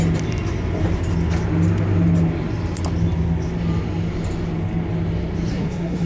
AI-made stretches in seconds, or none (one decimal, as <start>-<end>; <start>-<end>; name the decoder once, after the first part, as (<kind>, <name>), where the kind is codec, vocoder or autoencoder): 5.5-6.1 (codec, SNAC)